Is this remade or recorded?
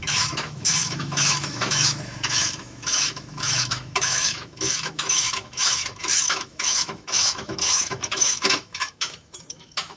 remade